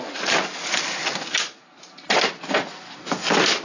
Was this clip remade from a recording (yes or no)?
no